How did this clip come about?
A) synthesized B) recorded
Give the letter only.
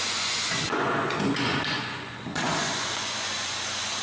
A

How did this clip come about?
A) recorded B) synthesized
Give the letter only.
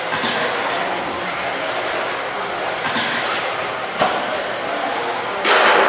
A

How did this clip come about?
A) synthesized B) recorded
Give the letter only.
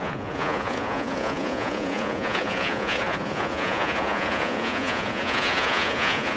A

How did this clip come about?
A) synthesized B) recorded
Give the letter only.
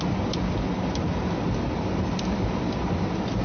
B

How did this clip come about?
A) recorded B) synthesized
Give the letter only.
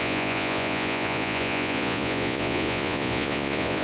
B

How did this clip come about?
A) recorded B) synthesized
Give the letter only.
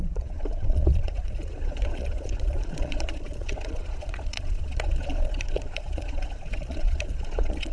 B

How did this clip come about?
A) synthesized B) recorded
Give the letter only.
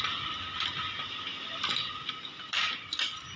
B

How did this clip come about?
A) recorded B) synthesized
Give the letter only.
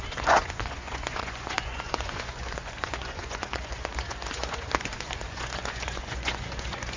B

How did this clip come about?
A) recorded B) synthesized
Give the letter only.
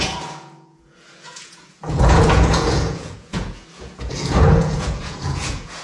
B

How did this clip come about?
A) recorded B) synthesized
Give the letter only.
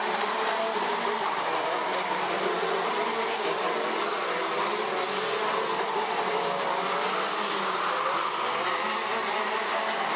A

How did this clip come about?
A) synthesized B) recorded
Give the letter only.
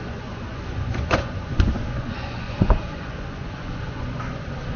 A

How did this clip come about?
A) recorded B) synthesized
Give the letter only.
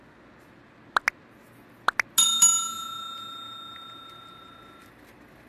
A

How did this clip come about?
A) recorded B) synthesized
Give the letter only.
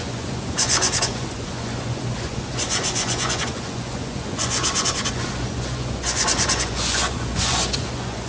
B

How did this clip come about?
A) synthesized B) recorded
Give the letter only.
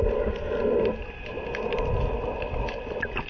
B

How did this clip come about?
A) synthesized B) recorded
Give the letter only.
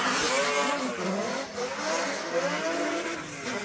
B